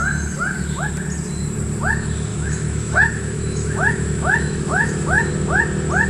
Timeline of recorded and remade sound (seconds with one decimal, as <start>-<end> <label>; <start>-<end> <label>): 0.0-2.3 recorded; 2.3-5.3 remade; 5.3-6.1 recorded

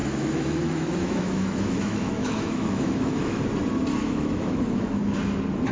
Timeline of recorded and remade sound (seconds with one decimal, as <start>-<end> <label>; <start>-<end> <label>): 0.0-3.4 remade; 3.4-4.0 recorded; 4.0-5.0 remade; 5.0-5.7 recorded

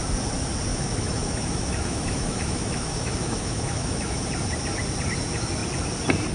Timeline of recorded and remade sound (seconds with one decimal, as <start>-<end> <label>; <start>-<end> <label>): 0.0-0.7 recorded; 0.7-4.3 remade; 4.3-6.3 recorded

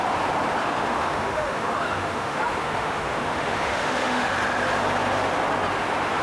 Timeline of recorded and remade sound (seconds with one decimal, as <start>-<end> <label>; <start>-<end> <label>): 0.0-0.6 recorded; 0.6-4.3 remade; 4.3-6.2 recorded